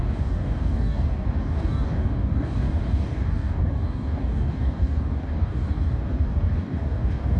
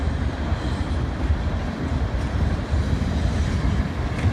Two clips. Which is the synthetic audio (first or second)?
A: first